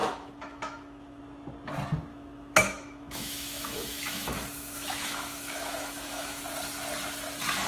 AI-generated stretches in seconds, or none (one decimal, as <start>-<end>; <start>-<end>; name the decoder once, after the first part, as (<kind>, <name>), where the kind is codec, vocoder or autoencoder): 0.0-1.2 (autoencoder, DAC-VAE); 2.1-6.4